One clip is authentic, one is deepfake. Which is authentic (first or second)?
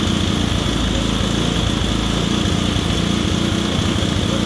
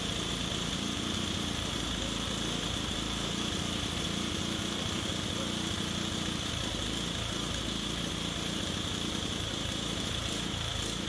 first